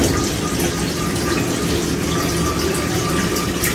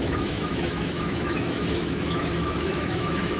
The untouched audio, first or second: first